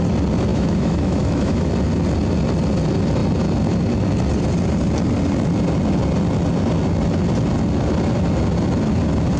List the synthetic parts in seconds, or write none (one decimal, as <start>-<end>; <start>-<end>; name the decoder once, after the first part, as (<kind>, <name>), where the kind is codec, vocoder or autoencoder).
0.5-1.7 (autoencoder, DAC-VAE)